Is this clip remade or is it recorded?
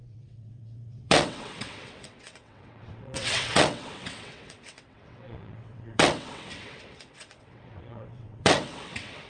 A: remade